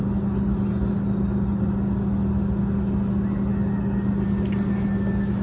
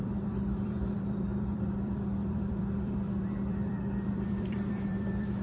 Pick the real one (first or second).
first